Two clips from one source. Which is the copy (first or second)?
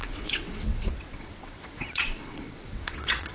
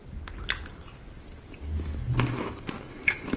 first